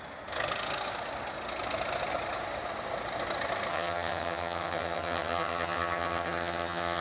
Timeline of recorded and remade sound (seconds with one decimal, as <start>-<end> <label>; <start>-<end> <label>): 0.0-3.7 recorded; 3.7-7.0 remade